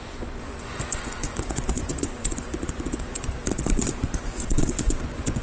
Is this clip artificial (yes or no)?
yes